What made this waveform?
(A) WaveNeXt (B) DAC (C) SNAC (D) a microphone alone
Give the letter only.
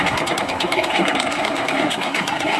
C